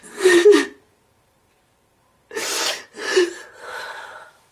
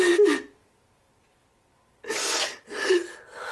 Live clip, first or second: second